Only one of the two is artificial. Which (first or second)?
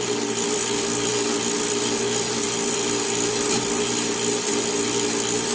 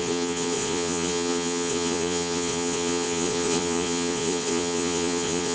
second